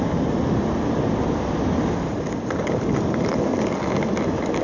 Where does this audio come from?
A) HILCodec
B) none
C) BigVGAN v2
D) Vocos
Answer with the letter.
B